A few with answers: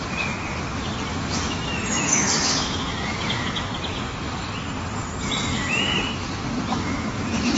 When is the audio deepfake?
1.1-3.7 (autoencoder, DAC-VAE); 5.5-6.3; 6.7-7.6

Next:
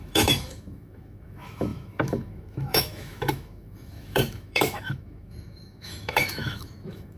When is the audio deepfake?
0.0-7.2 (autoencoder, DAC-VAE)

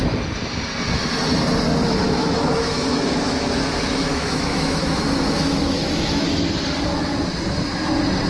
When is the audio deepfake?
2.0-6.2 (autoencoder, DAC-VAE)